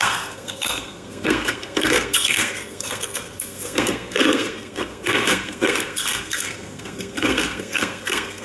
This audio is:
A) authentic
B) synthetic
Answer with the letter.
B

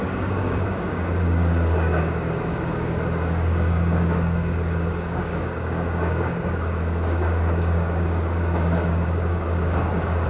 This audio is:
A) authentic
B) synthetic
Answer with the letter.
B